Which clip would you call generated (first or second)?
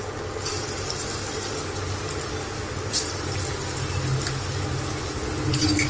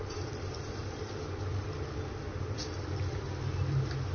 second